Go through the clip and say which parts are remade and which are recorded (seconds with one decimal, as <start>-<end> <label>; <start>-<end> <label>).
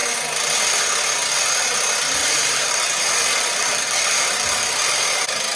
0.0-2.2 recorded; 2.2-4.9 remade; 4.9-5.6 recorded